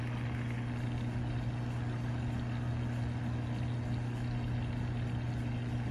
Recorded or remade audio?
recorded